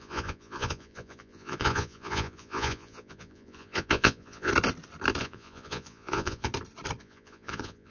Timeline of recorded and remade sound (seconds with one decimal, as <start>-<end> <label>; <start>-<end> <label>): 0.0-4.5 remade; 4.5-5.2 recorded; 5.2-6.5 remade; 6.5-7.0 recorded; 7.0-7.9 remade